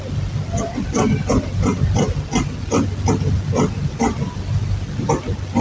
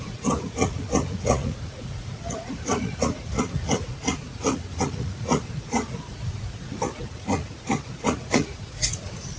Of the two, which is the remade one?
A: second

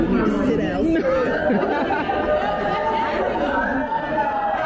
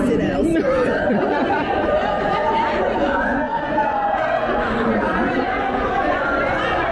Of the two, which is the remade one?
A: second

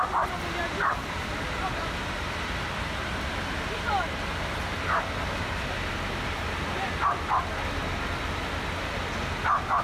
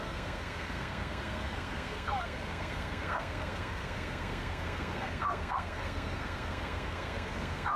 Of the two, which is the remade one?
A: second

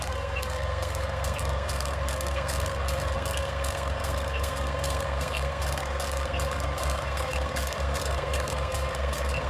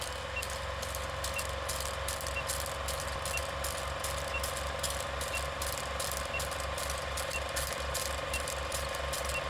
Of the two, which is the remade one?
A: first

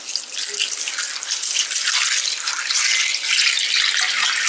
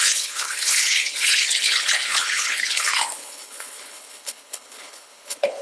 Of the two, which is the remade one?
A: second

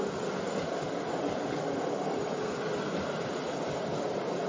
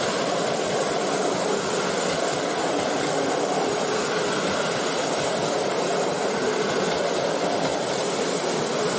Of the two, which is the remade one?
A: second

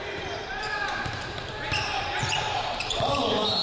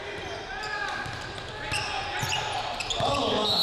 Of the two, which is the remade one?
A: first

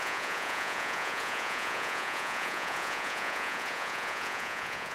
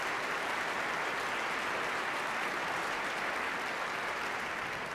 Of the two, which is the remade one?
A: first